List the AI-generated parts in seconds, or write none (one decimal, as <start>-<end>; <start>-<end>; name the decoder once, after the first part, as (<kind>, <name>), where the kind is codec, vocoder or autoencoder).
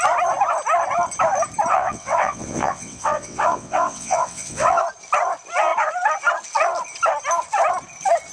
1.7-4.8 (vocoder, WaveNeXt)